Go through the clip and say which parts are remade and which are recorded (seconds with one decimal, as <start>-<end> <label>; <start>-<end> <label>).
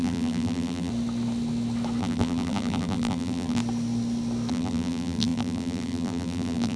0.0-0.9 remade; 0.9-2.0 recorded; 2.0-3.6 remade; 3.6-4.5 recorded; 4.5-6.8 remade